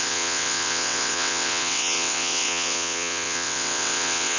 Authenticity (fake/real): fake